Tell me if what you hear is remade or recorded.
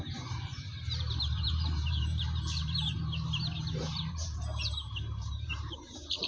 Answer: remade